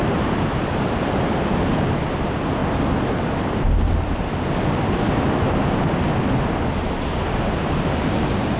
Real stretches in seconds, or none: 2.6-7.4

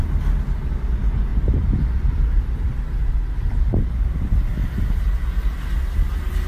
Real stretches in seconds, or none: 0.0-1.3; 2.8-6.5

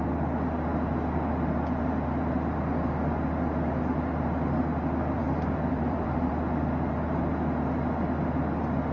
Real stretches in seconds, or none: 0.0-5.2; 6.3-8.9

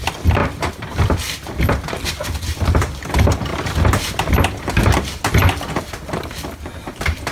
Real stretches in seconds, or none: 0.0-7.3

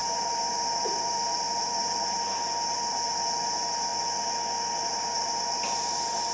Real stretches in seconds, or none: 3.9-4.9

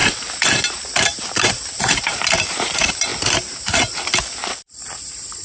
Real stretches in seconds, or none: 3.1-4.2

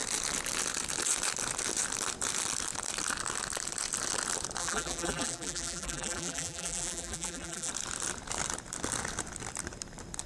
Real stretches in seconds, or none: 0.0-4.6; 7.7-10.3

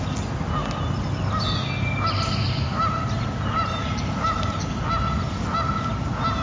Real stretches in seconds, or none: 0.0-0.6; 1.4-2.4; 4.7-6.4